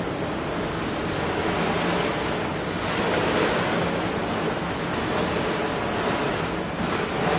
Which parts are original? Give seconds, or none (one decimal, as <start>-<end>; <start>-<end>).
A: 0.0-7.4